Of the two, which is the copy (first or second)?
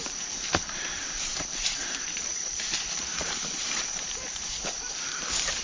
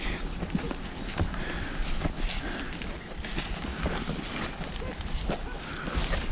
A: first